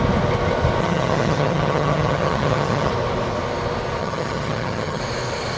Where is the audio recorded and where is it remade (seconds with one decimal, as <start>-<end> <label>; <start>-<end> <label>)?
0.0-0.8 recorded; 0.8-2.9 remade; 2.9-4.0 recorded; 4.0-5.0 remade; 5.0-5.6 recorded